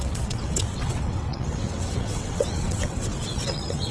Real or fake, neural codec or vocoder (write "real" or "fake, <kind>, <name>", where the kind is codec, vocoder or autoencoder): fake, vocoder, WaveNeXt